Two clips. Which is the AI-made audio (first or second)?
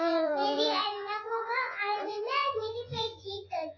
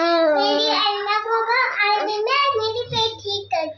first